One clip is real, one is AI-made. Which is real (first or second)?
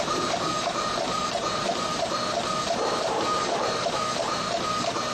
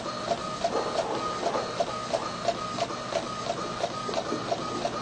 second